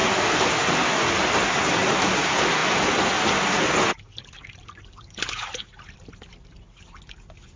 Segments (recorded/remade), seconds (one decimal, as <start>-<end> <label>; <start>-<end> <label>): 0.0-7.6 recorded